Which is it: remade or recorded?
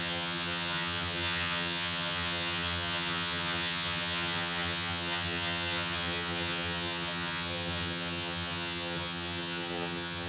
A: remade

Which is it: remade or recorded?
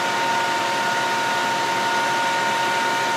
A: recorded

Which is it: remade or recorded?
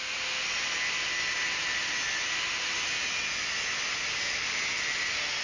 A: recorded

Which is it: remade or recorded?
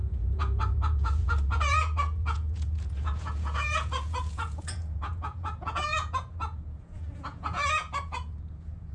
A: remade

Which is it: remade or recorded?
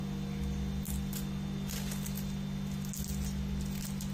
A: recorded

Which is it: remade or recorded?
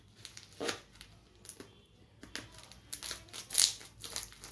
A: recorded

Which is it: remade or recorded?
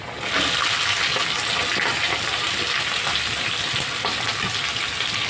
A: recorded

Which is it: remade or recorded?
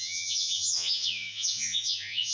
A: remade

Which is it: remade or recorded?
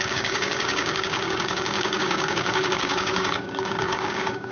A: remade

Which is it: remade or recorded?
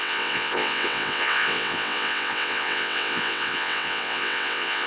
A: remade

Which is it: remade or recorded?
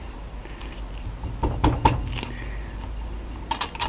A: recorded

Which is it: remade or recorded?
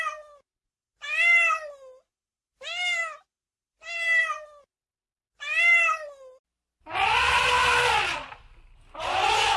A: recorded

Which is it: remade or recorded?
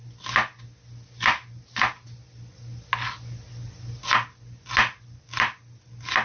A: recorded